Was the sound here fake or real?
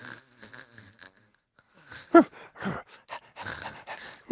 real